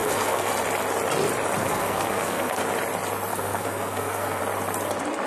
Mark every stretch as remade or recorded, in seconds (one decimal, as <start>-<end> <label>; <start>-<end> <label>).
0.0-0.5 remade; 0.5-1.6 recorded; 1.6-2.6 remade; 2.6-3.3 recorded; 3.3-4.4 remade; 4.4-5.3 recorded